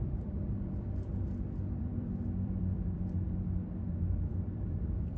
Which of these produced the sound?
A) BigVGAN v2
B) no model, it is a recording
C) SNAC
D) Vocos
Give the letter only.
A